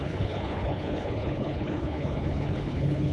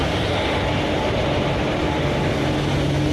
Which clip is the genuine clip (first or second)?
second